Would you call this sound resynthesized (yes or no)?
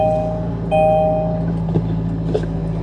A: no